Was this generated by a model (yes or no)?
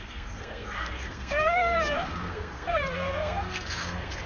yes